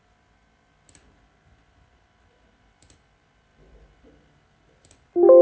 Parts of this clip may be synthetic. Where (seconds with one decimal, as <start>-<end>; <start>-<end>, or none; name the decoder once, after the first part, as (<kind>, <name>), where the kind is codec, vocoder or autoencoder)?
none